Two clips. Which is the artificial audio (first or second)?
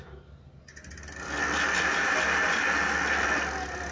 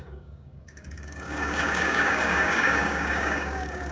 second